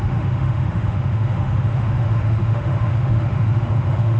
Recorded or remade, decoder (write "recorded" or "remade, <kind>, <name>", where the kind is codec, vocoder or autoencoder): remade, autoencoder, DAC-VAE